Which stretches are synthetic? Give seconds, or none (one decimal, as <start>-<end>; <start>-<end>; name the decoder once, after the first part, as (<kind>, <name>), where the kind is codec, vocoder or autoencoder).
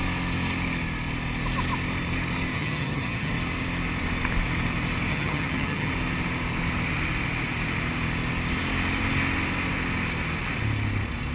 2.5-3.3 (vocoder, HiFi-GAN); 5.1-5.9